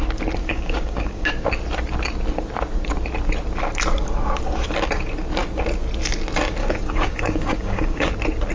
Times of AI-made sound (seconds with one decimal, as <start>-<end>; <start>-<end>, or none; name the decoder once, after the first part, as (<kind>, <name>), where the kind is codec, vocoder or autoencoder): 0.4-1.3 (codec, DAC); 6.6-8.1